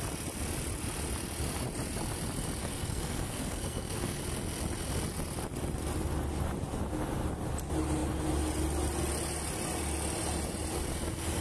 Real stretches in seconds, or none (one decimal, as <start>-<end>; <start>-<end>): 0.0-2.6; 4.2-11.4

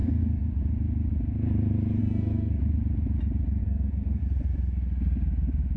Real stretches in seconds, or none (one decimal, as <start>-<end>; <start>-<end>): 0.6-2.0; 2.6-3.6; 4.2-5.8